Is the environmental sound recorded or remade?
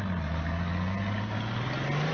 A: recorded